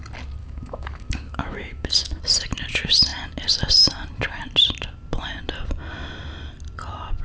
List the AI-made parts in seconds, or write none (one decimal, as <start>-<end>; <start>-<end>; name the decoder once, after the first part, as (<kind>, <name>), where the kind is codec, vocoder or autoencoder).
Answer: 0.4-2.2 (autoencoder, DAC-VAE)